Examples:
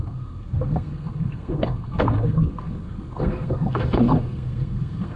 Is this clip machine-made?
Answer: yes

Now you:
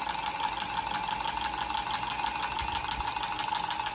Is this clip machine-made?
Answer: no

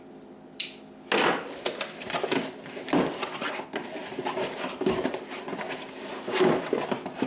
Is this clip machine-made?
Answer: no